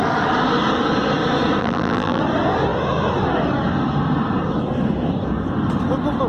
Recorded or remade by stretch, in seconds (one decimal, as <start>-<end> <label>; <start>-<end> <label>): 0.0-1.6 recorded; 1.6-2.2 remade; 2.2-6.3 recorded